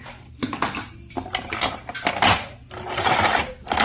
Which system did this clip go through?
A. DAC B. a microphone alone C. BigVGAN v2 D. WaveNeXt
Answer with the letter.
B